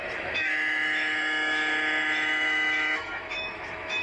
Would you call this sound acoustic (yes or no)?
no